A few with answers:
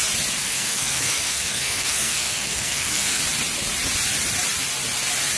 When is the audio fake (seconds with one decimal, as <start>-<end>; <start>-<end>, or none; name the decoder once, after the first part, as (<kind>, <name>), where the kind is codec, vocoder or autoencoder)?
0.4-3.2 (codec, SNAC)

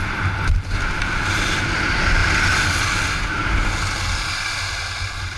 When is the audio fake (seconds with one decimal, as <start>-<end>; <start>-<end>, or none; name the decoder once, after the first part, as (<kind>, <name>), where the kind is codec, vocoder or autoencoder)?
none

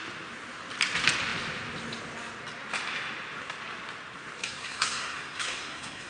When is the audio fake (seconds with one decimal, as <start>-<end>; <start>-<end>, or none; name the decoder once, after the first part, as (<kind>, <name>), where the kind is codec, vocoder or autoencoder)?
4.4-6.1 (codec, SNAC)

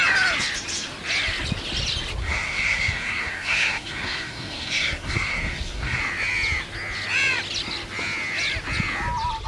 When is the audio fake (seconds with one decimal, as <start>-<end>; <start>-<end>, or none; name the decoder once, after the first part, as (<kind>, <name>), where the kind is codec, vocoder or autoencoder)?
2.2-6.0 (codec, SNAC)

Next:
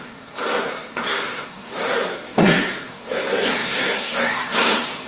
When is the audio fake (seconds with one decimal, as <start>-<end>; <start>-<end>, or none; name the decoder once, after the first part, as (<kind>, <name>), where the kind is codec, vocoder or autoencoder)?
0.0-5.1 (codec, SNAC)

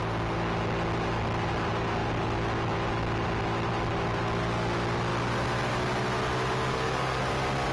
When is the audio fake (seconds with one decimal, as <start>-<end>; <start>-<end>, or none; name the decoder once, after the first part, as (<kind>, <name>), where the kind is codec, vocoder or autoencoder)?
6.7-7.2 (codec, SNAC)